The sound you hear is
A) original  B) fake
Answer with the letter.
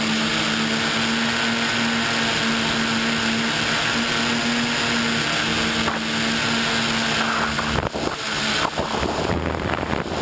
A